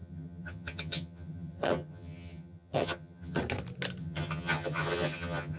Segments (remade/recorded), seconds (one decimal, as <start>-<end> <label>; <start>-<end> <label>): 0.0-3.4 remade; 3.4-4.0 recorded; 4.0-5.6 remade